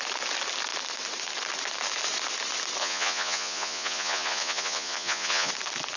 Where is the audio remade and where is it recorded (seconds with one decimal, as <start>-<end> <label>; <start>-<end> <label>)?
0.0-2.8 recorded; 2.8-5.5 remade; 5.5-6.0 recorded